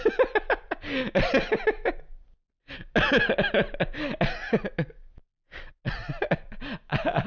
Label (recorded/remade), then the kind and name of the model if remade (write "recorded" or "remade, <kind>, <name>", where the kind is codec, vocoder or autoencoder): recorded